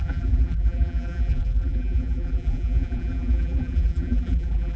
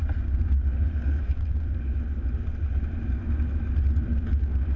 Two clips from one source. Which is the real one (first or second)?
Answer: second